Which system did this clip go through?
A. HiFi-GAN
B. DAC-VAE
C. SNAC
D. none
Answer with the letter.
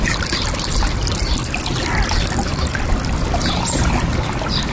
D